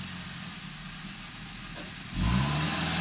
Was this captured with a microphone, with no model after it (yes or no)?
yes